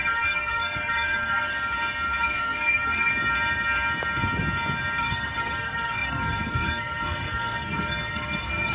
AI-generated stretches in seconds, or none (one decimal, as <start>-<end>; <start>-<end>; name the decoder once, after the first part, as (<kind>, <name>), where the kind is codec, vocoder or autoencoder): 0.0-1.5 (codec, SNAC); 2.2-3.1; 5.0-8.7